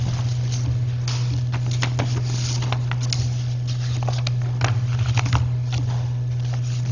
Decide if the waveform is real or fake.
real